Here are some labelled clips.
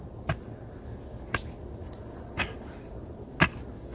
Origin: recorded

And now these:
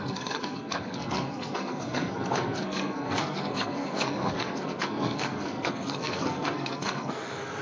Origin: remade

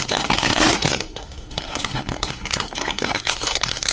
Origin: remade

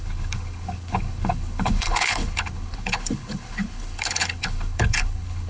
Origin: remade